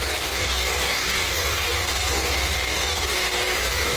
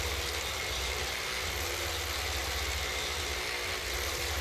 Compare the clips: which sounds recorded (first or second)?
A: second